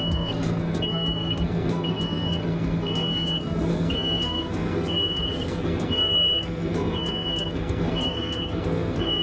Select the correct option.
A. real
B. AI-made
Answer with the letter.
B